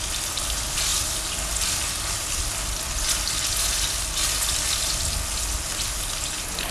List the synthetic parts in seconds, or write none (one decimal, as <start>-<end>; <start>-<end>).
none

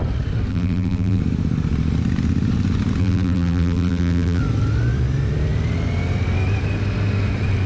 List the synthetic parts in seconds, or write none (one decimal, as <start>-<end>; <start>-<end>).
0.5-1.2; 3.0-4.4

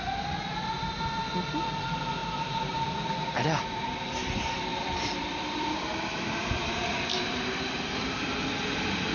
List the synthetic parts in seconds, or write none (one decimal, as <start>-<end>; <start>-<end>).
0.0-9.1

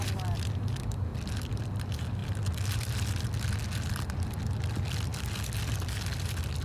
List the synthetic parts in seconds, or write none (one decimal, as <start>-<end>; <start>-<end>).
1.1-1.6; 5.1-6.6

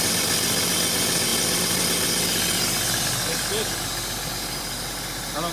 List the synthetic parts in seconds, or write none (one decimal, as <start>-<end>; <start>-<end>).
none

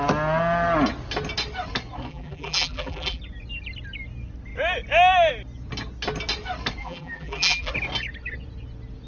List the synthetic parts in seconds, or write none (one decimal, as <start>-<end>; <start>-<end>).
2.1-3.2; 6.8-7.7

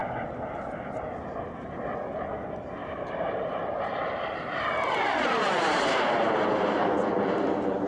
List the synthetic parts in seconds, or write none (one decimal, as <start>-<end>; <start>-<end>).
2.8-6.3